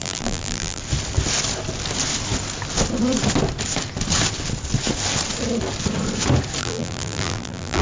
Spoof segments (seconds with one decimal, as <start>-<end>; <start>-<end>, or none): 0.0-0.8; 6.6-7.8